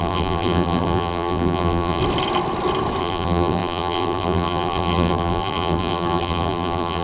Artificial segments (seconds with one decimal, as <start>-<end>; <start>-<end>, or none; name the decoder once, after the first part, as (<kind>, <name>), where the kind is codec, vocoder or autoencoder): 0.0-2.0 (vocoder, BigVGAN v2); 3.0-7.0